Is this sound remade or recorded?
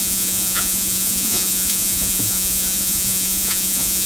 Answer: remade